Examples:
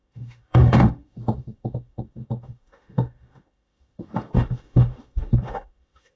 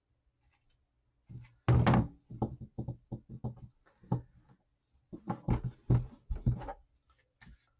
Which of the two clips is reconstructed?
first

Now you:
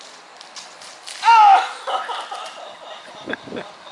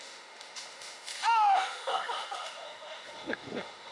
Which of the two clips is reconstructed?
second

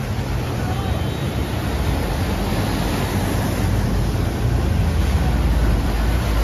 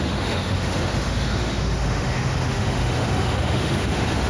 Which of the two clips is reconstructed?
second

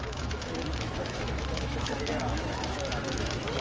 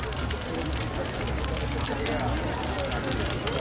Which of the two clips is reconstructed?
first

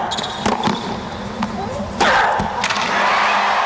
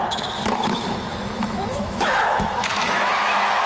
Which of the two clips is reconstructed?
second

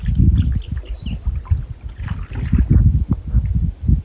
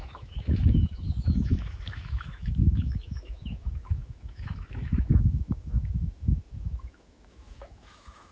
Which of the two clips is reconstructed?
second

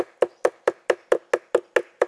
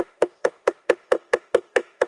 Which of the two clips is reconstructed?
second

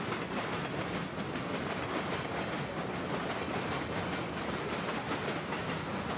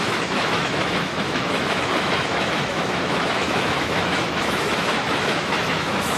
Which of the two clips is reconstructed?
second